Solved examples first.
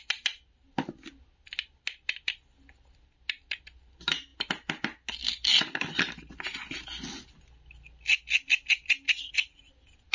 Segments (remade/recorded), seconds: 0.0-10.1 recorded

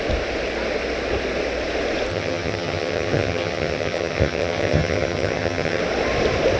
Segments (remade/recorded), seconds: 0.0-2.1 recorded; 2.1-5.8 remade; 5.8-6.6 recorded

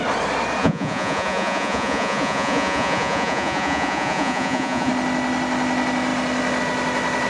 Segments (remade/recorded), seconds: 0.0-0.6 recorded; 0.6-4.9 remade; 4.9-7.3 recorded